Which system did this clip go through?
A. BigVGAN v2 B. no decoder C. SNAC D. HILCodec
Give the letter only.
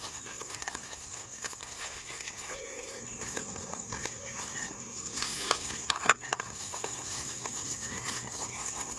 C